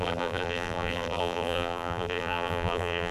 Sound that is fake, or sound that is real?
fake